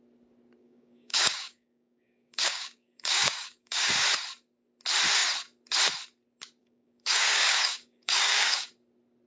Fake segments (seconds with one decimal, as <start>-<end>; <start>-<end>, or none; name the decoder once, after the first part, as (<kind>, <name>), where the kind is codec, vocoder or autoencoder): 0.6-3.9 (codec, DAC); 6.6-8.7